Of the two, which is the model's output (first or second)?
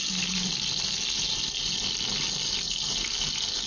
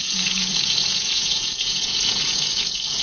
second